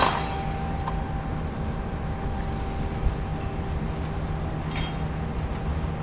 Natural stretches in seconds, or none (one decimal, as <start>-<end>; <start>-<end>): 0.0-6.0